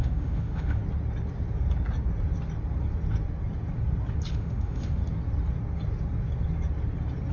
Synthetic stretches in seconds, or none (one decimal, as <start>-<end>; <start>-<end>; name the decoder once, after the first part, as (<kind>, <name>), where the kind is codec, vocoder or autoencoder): 0.0-0.8 (autoencoder, DAC-VAE); 4.3-5.0